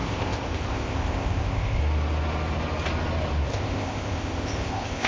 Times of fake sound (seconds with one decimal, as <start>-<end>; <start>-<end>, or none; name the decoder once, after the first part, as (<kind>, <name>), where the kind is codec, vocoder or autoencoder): 0.0-1.8 (codec, ZipCodec); 3.5-5.1